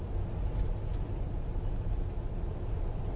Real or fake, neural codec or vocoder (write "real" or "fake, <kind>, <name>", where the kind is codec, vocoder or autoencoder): real